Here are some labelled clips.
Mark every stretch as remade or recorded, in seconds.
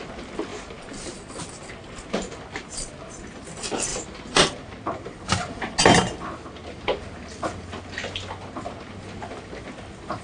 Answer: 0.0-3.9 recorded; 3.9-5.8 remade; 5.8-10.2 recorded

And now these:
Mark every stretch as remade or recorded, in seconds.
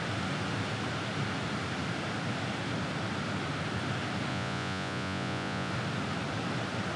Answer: 0.0-4.3 recorded; 4.3-5.7 remade; 5.7-7.0 recorded